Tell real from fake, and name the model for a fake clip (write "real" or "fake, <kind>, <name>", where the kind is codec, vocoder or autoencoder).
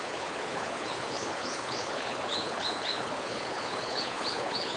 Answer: fake, codec, HILCodec